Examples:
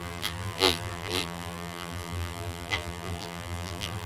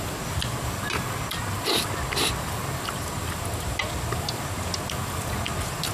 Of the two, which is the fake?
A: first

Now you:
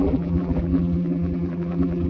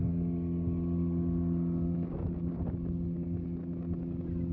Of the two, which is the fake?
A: first